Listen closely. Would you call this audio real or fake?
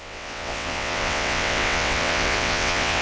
fake